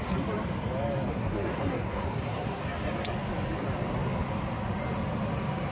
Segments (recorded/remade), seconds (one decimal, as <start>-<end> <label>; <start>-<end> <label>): 0.0-1.1 recorded; 1.1-2.6 remade; 2.6-5.7 recorded